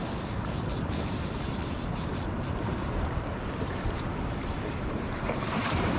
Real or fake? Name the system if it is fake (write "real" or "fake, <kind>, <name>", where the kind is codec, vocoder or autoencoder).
fake, vocoder, BigVGAN v2